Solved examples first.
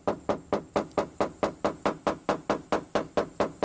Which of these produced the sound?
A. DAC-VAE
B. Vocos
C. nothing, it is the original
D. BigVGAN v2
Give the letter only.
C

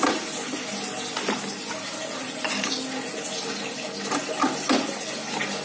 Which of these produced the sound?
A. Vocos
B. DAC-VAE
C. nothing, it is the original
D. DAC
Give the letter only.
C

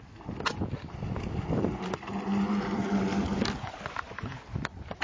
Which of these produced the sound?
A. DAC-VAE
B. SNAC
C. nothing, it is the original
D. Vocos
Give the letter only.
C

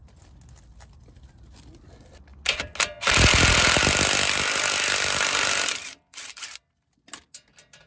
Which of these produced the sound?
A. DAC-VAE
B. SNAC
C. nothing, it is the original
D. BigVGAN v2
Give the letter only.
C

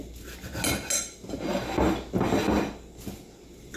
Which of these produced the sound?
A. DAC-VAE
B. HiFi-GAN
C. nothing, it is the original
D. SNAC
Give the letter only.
C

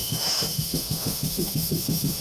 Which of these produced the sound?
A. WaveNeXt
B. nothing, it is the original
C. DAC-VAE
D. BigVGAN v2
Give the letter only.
C